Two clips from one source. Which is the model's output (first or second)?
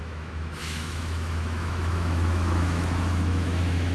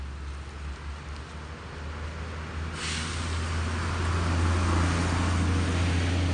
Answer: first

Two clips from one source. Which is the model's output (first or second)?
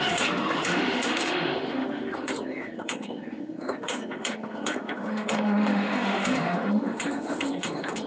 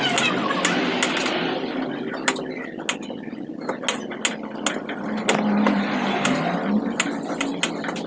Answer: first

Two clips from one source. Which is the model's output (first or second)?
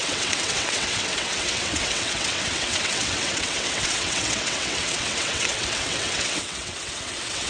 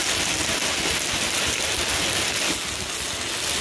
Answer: first